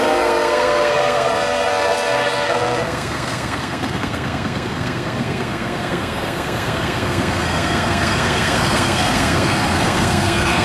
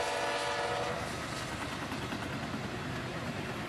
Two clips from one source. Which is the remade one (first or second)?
first